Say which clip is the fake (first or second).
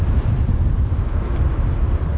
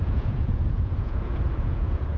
second